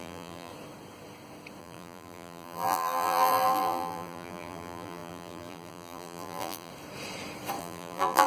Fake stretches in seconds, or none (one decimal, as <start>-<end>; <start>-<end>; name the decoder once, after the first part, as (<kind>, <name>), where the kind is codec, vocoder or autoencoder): 0.0-0.5 (vocoder, BigVGAN v2); 1.6-6.7; 7.6-8.3